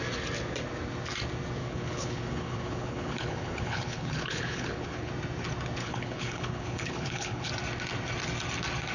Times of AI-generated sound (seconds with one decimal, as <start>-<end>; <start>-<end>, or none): 1.6-5.1; 5.8-7.5